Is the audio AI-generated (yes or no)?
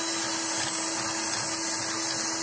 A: no